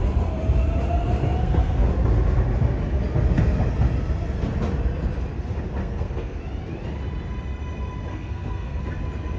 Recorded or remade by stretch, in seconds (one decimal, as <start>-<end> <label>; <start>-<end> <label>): 0.0-1.4 recorded; 1.4-1.9 remade; 1.9-5.8 recorded; 5.8-6.4 remade; 6.4-8.1 recorded; 8.1-8.8 remade; 8.8-9.4 recorded

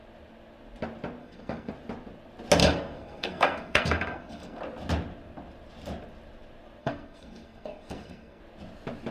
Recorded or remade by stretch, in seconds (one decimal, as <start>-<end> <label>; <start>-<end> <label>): 0.0-1.2 recorded; 1.2-1.7 remade; 1.7-2.6 recorded; 2.6-4.6 remade; 4.6-6.8 recorded; 6.8-8.4 remade; 8.4-9.1 recorded

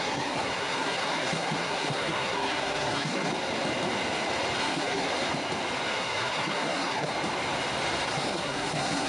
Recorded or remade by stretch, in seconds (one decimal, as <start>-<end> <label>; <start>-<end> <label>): 0.0-3.3 remade; 3.3-4.6 recorded; 4.6-5.1 remade; 5.1-5.9 recorded; 5.9-7.1 remade; 7.1-8.1 recorded; 8.1-9.1 remade

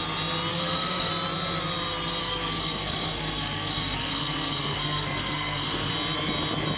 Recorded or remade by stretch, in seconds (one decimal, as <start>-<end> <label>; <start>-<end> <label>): 0.0-0.5 recorded; 0.5-1.1 remade; 1.1-2.2 recorded; 2.2-5.9 remade; 5.9-6.8 recorded

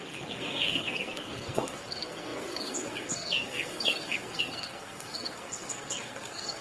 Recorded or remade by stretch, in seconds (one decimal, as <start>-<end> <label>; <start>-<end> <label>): 0.0-6.6 remade

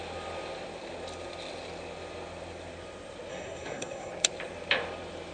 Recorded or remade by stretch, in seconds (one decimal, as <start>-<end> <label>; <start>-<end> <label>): 0.0-3.3 recorded; 3.3-4.1 remade; 4.1-5.3 recorded

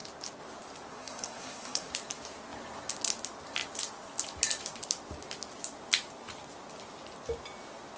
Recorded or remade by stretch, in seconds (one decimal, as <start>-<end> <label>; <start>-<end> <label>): 0.0-0.9 recorded; 0.9-1.9 remade; 1.9-8.0 recorded

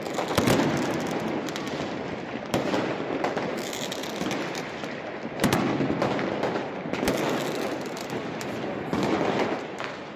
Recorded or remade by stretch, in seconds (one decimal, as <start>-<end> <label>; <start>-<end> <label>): 0.0-10.2 recorded